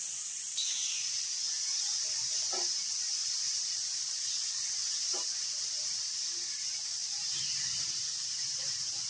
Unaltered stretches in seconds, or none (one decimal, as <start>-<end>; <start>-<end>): 0.0-3.2; 4.5-7.0